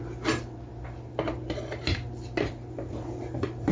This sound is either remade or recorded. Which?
recorded